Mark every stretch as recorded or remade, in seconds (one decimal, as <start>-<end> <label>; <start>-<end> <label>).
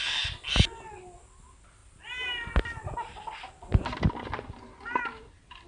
0.0-5.7 recorded